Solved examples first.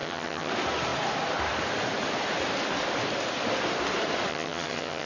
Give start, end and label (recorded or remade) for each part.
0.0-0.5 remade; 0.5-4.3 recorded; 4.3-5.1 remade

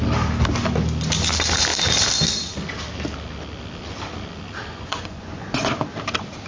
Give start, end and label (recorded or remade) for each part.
0.0-4.7 recorded; 4.7-5.7 remade; 5.7-6.5 recorded

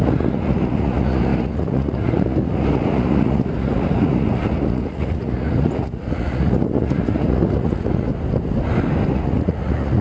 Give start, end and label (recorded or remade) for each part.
0.0-8.1 remade; 8.1-9.1 recorded; 9.1-10.0 remade

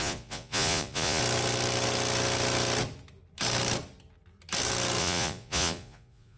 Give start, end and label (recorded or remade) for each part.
0.0-1.2 remade; 1.2-5.0 recorded; 5.0-6.4 remade

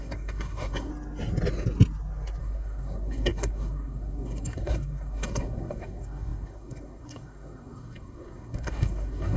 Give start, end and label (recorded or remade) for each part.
0.0-0.9 remade; 0.9-2.4 recorded; 2.4-9.4 remade

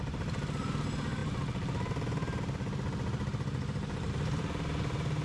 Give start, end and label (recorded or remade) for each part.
0.0-5.2 recorded

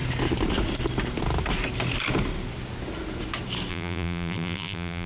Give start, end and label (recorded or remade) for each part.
0.0-3.7 recorded; 3.7-5.1 remade

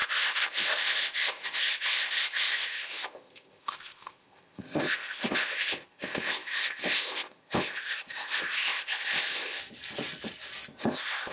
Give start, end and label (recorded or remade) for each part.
0.0-9.6 remade; 9.6-10.8 recorded; 10.8-11.3 remade